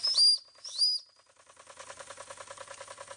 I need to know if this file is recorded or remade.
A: recorded